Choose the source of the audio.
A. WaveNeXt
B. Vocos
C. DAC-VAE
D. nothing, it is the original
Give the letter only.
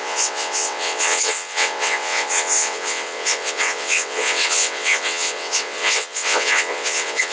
A